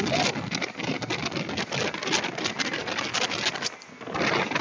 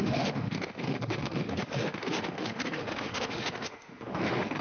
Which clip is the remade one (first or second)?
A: second